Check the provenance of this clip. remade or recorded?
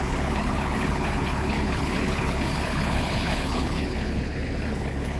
remade